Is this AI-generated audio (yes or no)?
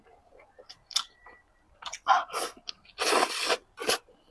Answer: yes